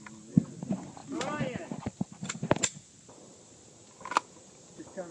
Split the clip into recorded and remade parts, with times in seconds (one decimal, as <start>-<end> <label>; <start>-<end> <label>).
0.0-5.1 recorded